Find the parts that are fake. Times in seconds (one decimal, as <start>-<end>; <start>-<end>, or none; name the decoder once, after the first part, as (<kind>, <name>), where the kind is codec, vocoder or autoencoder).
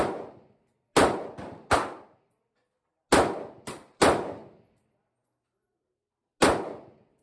none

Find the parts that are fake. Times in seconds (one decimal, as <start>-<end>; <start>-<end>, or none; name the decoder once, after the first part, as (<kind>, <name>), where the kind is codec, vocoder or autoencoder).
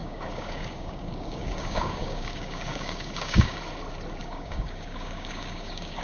0.0-3.6 (codec, DAC); 4.2-6.0